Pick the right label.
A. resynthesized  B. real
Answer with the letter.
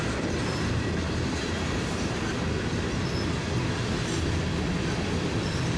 B